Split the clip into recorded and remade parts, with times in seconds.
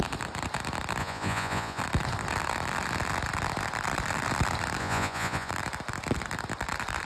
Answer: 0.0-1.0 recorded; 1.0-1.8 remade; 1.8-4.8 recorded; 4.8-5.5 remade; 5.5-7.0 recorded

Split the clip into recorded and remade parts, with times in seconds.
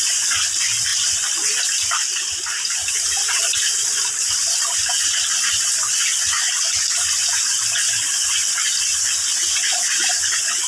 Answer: 0.0-10.7 recorded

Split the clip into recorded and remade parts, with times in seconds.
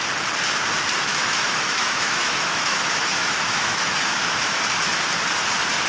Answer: 0.0-1.1 recorded; 1.1-4.6 remade; 4.6-5.9 recorded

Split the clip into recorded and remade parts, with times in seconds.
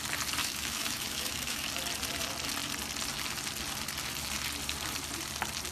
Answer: 0.0-0.4 recorded; 0.4-1.7 remade; 1.7-5.7 recorded